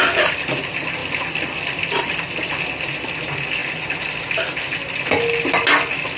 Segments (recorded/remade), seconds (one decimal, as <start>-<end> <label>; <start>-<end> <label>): 0.0-6.2 recorded